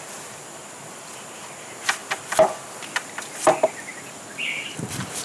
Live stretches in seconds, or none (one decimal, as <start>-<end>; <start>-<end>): 3.9-4.8